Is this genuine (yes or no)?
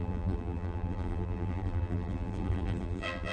no